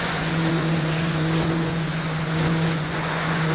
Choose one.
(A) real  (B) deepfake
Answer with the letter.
B